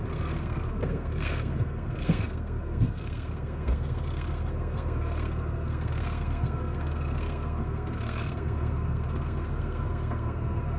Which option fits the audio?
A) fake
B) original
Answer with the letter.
A